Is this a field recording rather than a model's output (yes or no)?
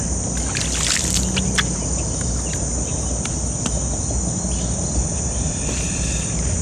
yes